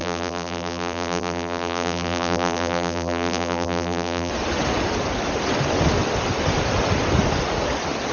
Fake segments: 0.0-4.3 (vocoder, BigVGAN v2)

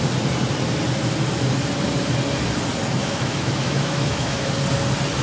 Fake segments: 3.0-4.5 (autoencoder, DAC-VAE)

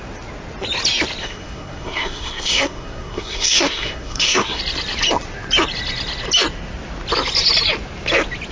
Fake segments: 1.2-4.6 (codec, SNAC)

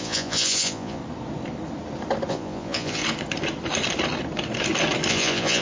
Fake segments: 0.0-1.0 (vocoder, Vocos); 2.3-3.0; 5.1-5.6

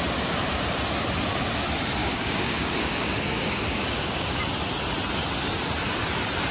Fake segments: 2.0-4.4 (codec, DAC)

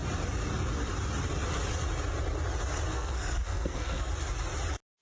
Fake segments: 2.9-4.1 (codec, SNAC)

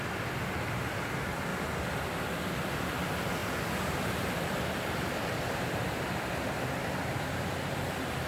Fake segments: 1.5-2.7 (vocoder, BigVGAN v2); 3.4-7.5

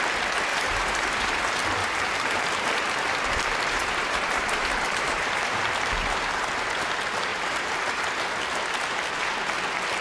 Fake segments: 0.5-1.4 (vocoder, BigVGAN v2); 1.8-6.4; 7.3-8.0